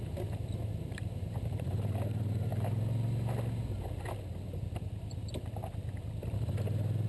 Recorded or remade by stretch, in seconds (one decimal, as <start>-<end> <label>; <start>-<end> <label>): 0.0-2.5 remade; 2.5-7.1 recorded

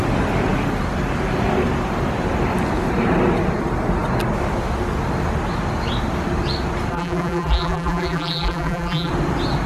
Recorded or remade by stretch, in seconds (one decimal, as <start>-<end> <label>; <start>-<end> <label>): 0.0-6.9 recorded; 6.9-9.1 remade; 9.1-9.7 recorded

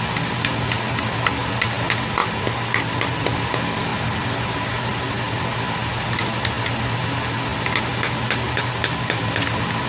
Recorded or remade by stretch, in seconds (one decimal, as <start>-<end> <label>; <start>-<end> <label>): 0.0-2.2 recorded; 2.2-3.2 remade; 3.2-3.9 recorded; 3.9-6.9 remade; 6.9-8.6 recorded; 8.6-9.2 remade; 9.2-9.9 recorded

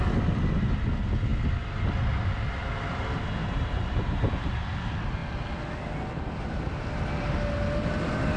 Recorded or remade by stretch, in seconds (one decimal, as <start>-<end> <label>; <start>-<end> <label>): 0.0-3.4 recorded; 3.4-4.3 remade; 4.3-8.4 recorded

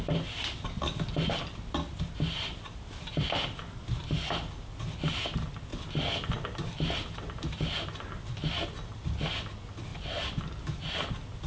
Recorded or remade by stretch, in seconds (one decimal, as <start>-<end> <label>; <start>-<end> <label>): 0.0-5.7 recorded; 5.7-7.5 remade; 7.5-9.9 recorded; 9.9-10.5 remade; 10.5-11.5 recorded